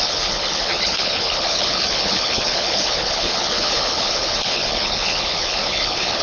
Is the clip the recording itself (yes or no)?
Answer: no